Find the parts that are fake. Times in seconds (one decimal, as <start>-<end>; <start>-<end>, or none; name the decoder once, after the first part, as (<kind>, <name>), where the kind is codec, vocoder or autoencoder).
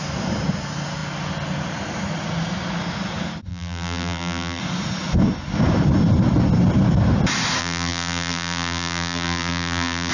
3.5-4.6 (vocoder, BigVGAN v2); 7.6-10.1